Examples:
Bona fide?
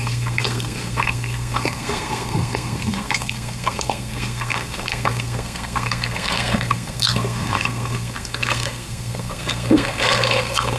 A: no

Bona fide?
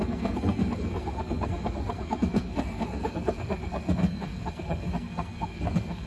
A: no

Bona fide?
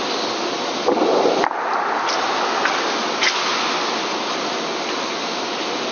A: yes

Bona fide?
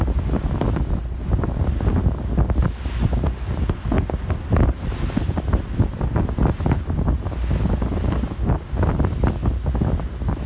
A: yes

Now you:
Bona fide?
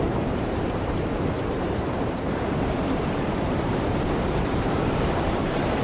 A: no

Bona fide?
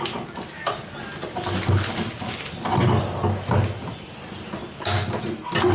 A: yes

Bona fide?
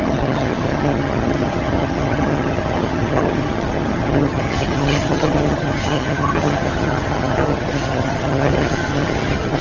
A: no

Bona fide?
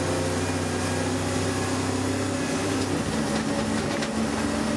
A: yes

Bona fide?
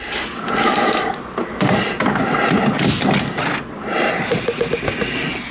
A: yes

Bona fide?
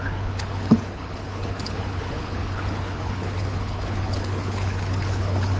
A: no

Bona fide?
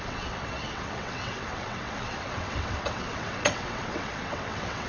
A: no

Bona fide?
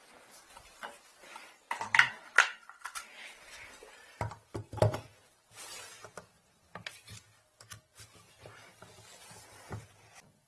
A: yes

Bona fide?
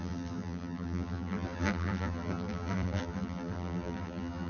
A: no